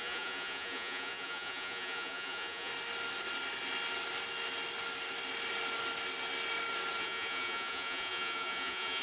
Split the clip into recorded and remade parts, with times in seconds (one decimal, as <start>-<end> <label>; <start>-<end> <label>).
0.0-2.7 remade; 2.7-7.0 recorded; 7.0-9.0 remade